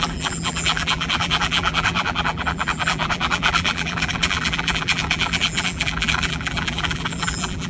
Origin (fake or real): fake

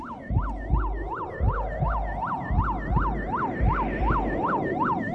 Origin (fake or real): fake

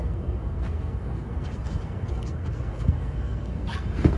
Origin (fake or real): fake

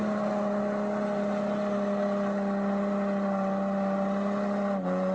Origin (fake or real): real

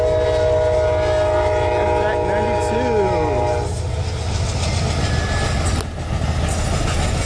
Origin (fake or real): real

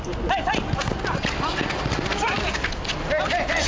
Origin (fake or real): real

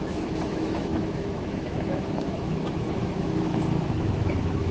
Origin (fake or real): fake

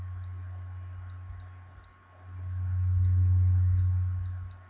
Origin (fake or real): real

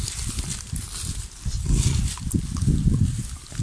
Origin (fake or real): real